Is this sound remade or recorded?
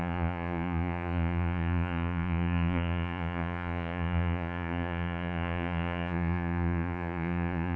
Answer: remade